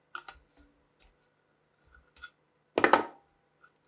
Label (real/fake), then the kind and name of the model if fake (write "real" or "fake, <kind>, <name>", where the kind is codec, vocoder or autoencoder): real